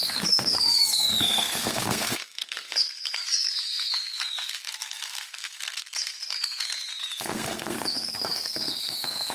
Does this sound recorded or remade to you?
remade